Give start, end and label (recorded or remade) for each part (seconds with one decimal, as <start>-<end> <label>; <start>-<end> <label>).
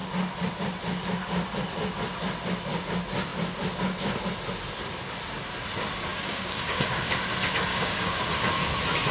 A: 0.0-6.1 recorded; 6.1-7.1 remade; 7.1-7.7 recorded; 7.7-8.2 remade; 8.2-9.1 recorded